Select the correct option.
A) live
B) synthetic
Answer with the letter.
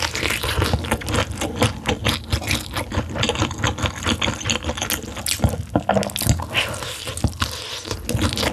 A